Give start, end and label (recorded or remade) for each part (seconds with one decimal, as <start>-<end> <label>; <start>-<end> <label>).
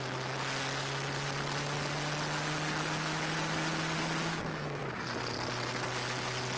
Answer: 0.0-4.3 recorded; 4.3-4.8 remade; 4.8-6.6 recorded